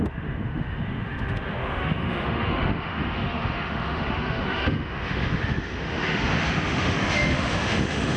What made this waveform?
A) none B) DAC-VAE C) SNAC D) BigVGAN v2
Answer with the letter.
B